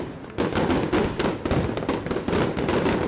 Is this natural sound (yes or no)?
yes